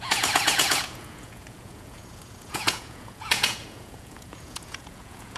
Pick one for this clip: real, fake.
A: fake